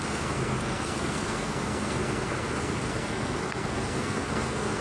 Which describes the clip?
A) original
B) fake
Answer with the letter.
B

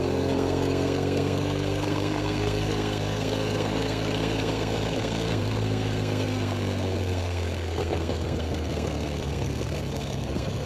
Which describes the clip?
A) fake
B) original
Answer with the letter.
A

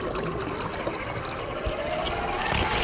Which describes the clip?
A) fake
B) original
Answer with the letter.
B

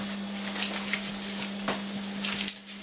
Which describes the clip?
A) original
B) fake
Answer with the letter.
A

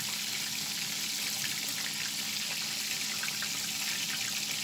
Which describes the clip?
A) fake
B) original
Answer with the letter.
B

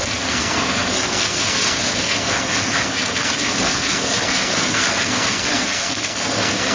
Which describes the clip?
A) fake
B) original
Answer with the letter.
A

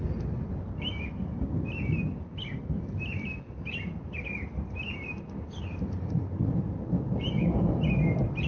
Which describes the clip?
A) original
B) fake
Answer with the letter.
A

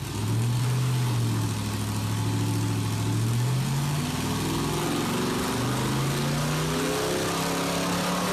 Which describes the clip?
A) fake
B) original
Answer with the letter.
B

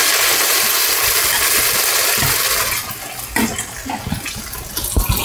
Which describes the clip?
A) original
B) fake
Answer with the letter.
A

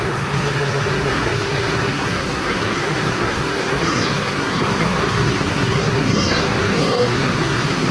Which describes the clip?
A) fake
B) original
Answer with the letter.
A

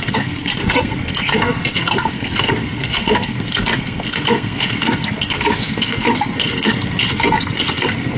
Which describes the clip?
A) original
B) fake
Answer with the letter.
B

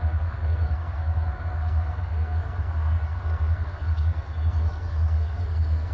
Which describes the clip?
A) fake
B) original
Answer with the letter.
A